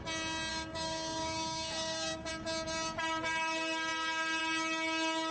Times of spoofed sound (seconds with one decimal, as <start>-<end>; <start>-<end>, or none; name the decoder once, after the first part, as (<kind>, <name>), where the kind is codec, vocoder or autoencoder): 0.5-2.3 (codec, DAC)